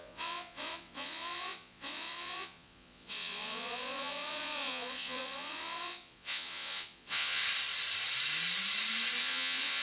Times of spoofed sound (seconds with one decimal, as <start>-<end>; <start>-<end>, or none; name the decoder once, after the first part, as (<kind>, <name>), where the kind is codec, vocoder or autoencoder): 0.0-7.4 (vocoder, Vocos); 9.2-9.8